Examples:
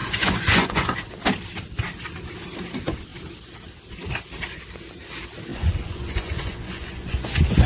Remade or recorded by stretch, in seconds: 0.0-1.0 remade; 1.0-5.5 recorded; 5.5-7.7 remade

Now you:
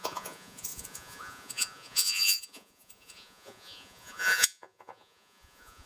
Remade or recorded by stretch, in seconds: 0.0-5.9 remade

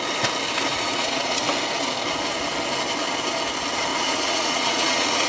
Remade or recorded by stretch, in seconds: 0.0-0.7 recorded; 0.7-1.4 remade; 1.4-3.9 recorded; 3.9-5.3 remade

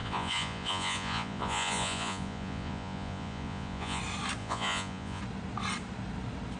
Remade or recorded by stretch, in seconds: 0.0-4.0 remade; 4.0-4.4 recorded; 4.4-5.2 remade; 5.2-6.6 recorded

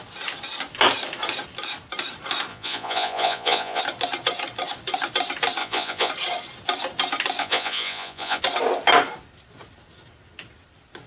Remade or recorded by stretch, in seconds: 0.0-2.5 recorded; 2.5-3.8 remade; 3.8-5.6 recorded; 5.6-6.1 remade; 6.1-7.4 recorded; 7.4-8.4 remade; 8.4-11.1 recorded

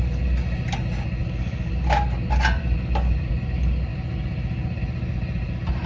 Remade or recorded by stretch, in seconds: 0.0-5.9 recorded